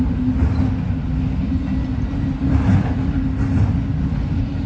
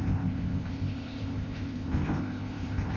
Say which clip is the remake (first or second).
second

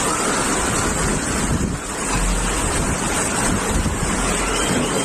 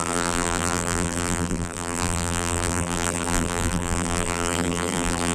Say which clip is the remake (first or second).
second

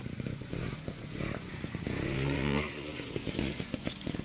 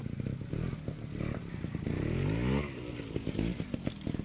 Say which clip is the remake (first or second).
first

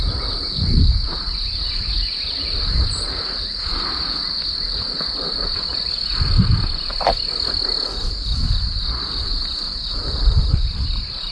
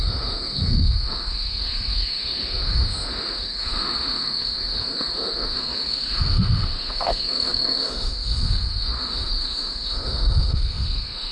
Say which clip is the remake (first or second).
second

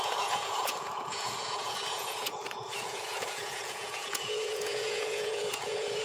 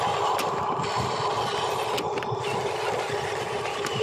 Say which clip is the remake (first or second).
first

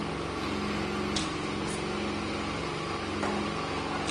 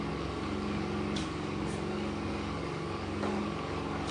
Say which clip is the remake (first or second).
second